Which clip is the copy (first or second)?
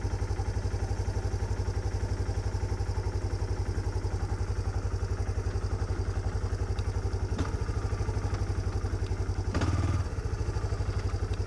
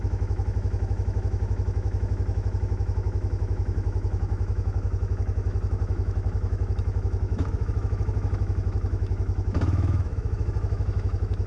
second